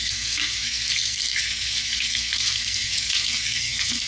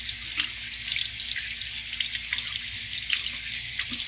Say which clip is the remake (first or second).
first